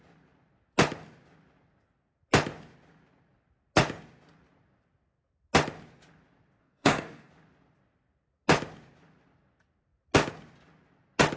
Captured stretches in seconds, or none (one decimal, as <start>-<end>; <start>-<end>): 0.0-6.6; 7.3-11.4